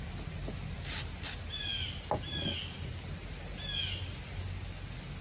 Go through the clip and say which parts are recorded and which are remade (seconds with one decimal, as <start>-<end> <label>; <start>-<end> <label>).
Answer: 0.0-5.2 recorded